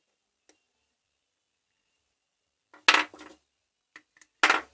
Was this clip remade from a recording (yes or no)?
no